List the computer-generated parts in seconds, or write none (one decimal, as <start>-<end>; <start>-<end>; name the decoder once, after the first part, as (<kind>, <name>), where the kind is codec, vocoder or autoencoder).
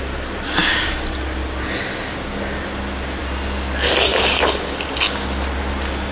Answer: none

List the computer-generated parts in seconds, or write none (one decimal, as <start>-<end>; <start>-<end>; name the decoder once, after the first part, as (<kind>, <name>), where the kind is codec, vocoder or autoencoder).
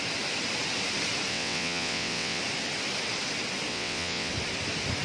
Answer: 1.3-2.4 (vocoder, WaveNeXt); 3.7-4.3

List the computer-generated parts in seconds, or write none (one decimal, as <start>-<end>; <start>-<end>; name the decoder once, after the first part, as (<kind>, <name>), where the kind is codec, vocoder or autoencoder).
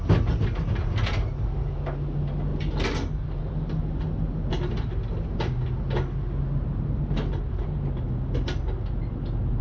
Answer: none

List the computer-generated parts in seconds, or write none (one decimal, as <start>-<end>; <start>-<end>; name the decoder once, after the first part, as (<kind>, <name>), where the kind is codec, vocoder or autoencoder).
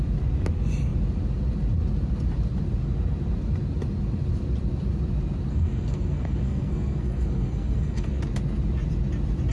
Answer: 5.5-8.2 (codec, SNAC)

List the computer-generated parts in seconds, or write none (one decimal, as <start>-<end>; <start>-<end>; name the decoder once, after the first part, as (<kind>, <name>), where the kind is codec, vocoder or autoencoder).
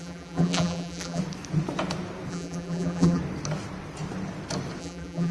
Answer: 0.0-1.2 (vocoder, BigVGAN v2); 2.3-3.2; 4.8-5.3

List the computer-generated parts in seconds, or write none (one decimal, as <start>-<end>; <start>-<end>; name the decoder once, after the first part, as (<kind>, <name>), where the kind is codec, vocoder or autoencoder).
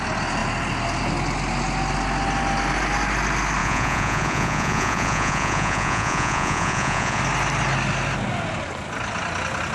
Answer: 3.6-7.2 (vocoder, Vocos)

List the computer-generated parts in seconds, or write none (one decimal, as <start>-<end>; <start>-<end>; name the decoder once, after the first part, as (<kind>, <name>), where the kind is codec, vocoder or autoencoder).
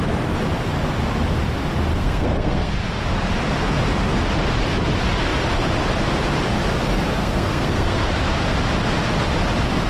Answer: 1.9-2.7 (codec, SNAC); 7.2-8.0